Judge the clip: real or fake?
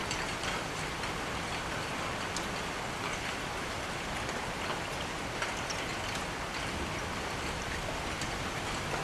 real